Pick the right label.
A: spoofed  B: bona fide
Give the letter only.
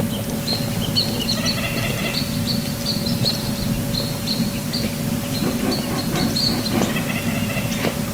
B